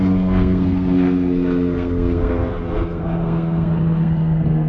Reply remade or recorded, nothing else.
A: remade